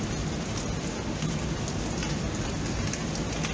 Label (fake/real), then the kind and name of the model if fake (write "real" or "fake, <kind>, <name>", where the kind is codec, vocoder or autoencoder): real